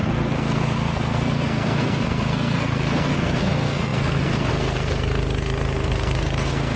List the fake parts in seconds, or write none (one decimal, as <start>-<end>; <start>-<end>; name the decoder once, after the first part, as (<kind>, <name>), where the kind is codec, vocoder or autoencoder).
0.0-6.8 (codec, SNAC)